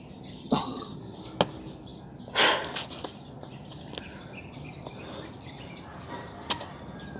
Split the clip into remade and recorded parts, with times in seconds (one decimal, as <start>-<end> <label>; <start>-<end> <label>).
0.0-0.4 recorded; 0.4-1.0 remade; 1.0-7.2 recorded